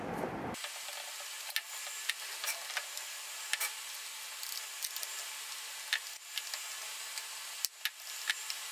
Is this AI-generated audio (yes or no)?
no